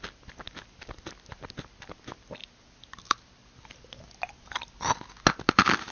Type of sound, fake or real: real